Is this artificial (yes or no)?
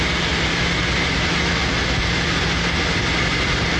no